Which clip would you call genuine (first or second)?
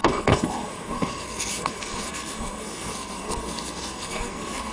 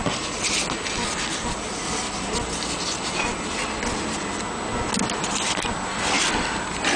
second